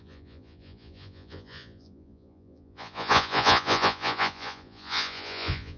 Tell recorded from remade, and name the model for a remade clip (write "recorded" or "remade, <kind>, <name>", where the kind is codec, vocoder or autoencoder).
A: remade, vocoder, Vocos